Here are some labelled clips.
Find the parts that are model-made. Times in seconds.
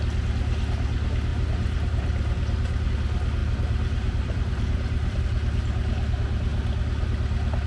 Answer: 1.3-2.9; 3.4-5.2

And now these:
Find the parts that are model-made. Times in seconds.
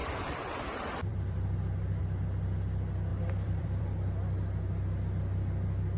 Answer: 0.0-2.0; 3.1-3.8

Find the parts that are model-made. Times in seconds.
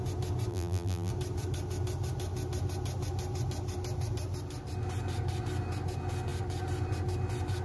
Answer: 0.5-1.1